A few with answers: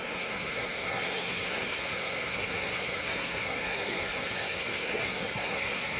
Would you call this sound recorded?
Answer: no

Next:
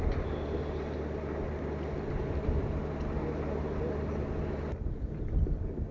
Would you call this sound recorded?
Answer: yes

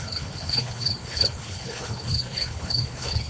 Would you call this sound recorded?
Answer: no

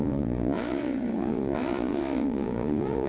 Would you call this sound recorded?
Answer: no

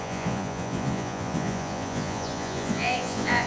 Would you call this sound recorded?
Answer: no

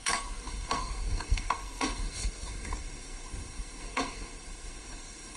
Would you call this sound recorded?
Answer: no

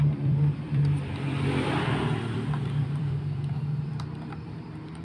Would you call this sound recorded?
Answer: no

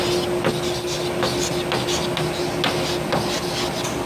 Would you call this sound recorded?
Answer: yes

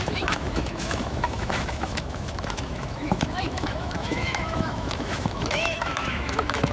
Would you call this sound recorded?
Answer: no